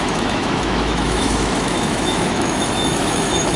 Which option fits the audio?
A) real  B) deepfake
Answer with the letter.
B